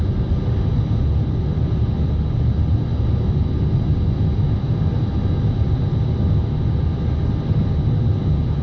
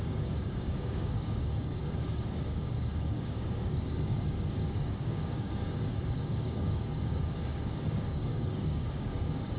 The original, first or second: first